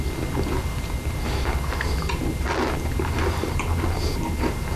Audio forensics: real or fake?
real